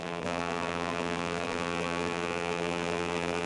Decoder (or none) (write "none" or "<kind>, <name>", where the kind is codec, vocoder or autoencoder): vocoder, BigVGAN v2